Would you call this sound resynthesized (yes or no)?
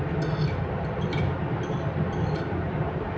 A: no